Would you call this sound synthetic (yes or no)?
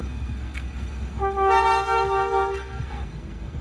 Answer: yes